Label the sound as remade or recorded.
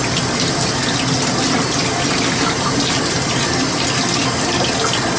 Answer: recorded